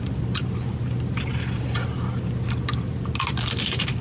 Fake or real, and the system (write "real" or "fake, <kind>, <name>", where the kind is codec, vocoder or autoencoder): fake, vocoder, BigVGAN v2